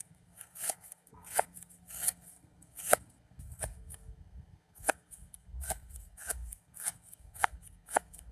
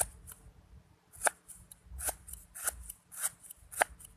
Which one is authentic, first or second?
second